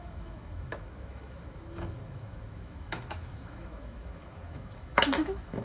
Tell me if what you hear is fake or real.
fake